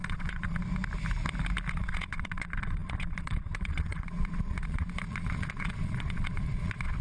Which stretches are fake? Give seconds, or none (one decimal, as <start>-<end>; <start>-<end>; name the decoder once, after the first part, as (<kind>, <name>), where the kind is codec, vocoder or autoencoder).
0.0-0.6 (vocoder, Vocos); 1.7-7.0